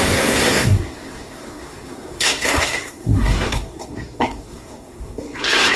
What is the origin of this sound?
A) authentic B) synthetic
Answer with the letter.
B